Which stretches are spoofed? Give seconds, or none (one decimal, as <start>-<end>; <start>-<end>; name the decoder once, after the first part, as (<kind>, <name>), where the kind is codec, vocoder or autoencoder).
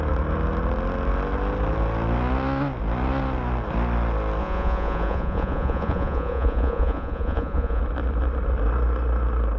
4.4-7.8 (vocoder, Vocos)